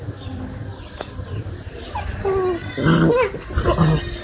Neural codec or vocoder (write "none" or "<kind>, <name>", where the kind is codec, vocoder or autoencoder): none